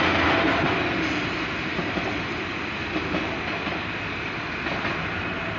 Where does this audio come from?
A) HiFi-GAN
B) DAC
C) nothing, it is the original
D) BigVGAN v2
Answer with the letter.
C